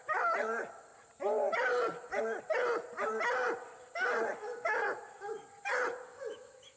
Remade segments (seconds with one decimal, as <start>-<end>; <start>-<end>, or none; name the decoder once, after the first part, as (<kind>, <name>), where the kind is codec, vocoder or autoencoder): 6.1-6.8 (autoencoder, DAC-VAE)